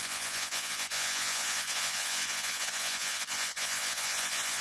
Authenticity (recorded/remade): remade